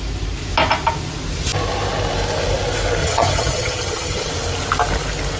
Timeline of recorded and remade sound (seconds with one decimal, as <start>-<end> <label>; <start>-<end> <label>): 0.0-3.0 recorded; 3.0-4.3 remade; 4.3-5.4 recorded